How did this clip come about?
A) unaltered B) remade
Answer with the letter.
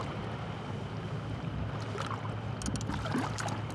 A